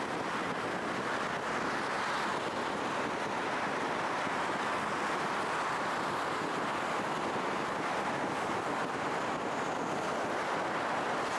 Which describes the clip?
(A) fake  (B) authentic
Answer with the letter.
B